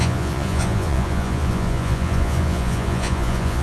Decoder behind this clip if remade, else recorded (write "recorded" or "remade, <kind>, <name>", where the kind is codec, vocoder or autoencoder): remade, vocoder, Vocos